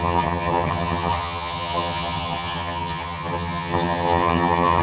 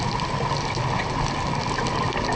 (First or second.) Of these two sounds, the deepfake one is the first